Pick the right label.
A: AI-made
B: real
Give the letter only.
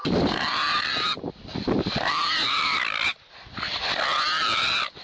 B